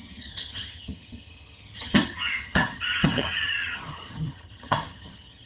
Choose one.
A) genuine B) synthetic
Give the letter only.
B